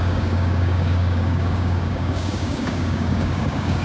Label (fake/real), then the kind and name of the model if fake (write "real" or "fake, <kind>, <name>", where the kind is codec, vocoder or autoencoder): fake, codec, DAC